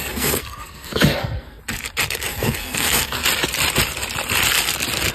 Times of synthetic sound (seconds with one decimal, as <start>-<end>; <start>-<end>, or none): 0.0-1.6; 2.1-3.2